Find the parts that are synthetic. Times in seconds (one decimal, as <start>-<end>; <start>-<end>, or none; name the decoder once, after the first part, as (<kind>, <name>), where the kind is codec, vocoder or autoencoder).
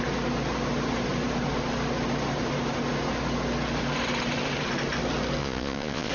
5.4-6.1 (vocoder, Vocos)